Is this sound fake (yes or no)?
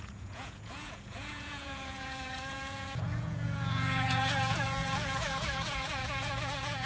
yes